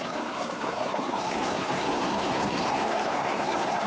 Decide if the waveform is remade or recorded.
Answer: remade